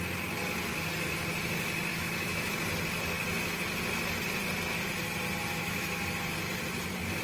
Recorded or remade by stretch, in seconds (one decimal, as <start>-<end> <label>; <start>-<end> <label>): 0.0-1.9 recorded; 1.9-2.5 remade; 2.5-5.5 recorded; 5.5-6.0 remade; 6.0-7.2 recorded